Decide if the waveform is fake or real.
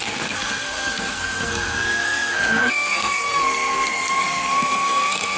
fake